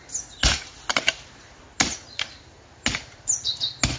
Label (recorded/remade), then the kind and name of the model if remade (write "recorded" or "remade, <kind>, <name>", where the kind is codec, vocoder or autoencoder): recorded